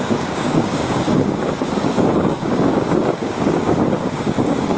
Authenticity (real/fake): fake